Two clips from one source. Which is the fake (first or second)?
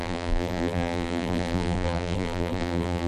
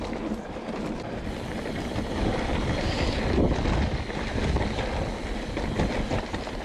first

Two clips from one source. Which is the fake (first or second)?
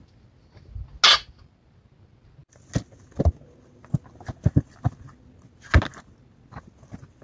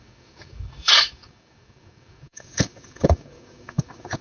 second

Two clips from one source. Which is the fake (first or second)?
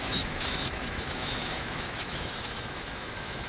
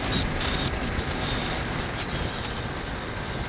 first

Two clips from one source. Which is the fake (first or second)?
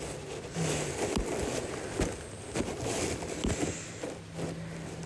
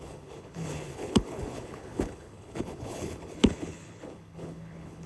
second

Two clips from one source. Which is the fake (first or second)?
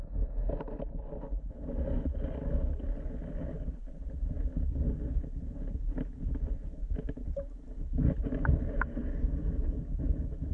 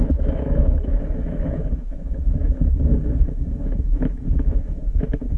second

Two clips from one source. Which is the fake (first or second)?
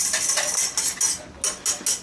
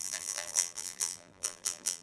second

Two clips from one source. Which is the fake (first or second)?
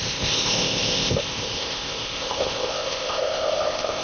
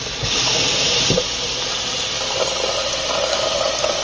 first